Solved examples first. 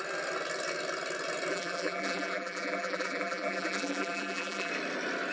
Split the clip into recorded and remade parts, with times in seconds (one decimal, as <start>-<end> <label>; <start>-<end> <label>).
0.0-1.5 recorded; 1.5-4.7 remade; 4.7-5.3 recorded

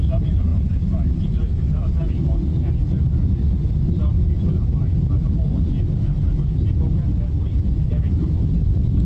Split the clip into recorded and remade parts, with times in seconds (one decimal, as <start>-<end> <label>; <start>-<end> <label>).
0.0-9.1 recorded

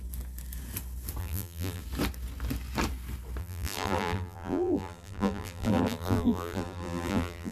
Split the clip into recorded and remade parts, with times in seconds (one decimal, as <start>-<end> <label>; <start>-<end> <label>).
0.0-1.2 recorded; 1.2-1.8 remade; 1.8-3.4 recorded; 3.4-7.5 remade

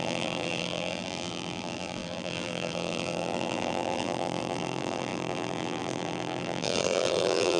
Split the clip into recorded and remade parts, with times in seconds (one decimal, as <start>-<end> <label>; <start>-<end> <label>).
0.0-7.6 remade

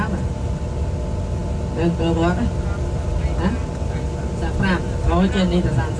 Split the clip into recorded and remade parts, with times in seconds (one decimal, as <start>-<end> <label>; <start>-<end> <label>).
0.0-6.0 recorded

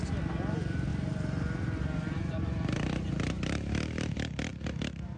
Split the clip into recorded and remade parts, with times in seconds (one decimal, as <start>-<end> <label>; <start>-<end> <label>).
0.0-0.9 recorded; 0.9-4.0 remade; 4.0-5.2 recorded